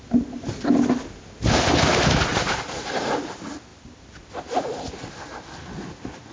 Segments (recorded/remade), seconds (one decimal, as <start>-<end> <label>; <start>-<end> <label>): 0.0-2.3 recorded; 2.3-3.1 remade; 3.1-6.3 recorded